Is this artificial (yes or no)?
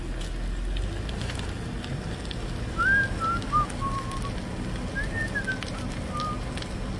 no